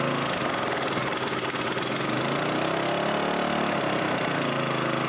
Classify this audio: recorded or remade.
recorded